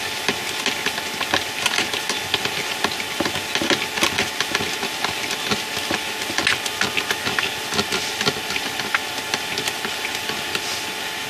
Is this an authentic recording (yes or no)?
yes